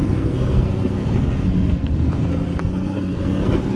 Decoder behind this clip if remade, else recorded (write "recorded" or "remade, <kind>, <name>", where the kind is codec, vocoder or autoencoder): remade, codec, SNAC